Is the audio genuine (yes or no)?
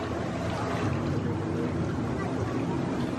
yes